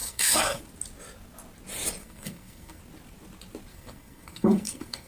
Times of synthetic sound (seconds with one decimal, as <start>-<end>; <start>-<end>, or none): 0.0-0.6; 2.0-2.8; 3.7-5.1